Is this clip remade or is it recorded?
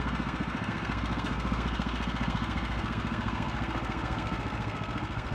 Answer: remade